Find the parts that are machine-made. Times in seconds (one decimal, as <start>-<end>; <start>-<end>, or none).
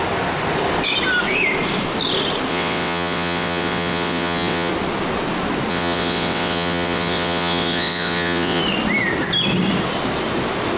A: 2.5-4.7; 5.7-8.6